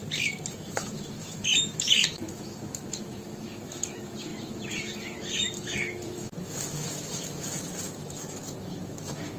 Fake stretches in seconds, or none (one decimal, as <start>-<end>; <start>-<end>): 0.5-9.4